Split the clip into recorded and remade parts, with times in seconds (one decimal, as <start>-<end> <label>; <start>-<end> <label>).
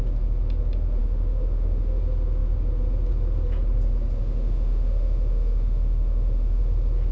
0.0-1.0 recorded; 1.0-2.0 remade; 2.0-4.2 recorded; 4.2-6.6 remade; 6.6-7.1 recorded